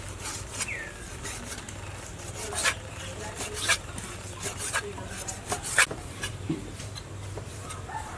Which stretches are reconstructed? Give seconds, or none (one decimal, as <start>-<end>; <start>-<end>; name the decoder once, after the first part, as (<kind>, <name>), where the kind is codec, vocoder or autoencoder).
2.6-6.8 (vocoder, BigVGAN v2); 7.5-8.2